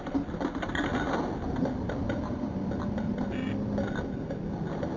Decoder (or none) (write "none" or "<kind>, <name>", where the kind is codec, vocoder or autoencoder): none